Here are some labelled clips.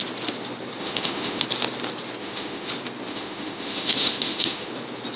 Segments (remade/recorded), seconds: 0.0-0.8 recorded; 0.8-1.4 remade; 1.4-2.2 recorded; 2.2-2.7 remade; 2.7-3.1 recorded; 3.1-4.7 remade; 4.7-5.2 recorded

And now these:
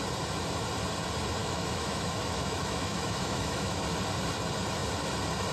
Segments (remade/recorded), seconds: 0.0-1.4 recorded; 1.4-3.8 remade; 3.8-5.5 recorded